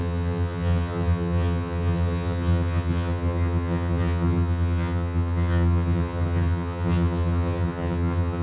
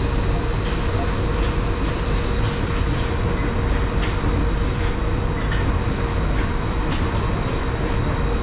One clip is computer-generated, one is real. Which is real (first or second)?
second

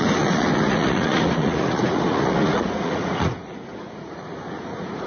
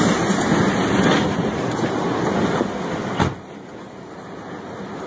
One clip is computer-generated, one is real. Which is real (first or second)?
second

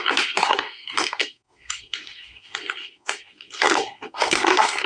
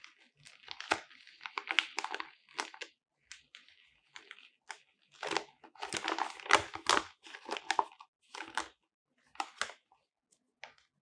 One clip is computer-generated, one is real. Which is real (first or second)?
second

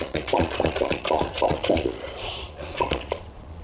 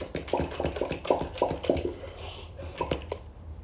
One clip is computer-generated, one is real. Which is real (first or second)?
second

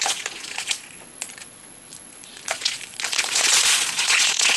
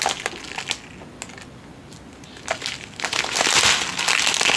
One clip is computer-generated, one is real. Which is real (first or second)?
second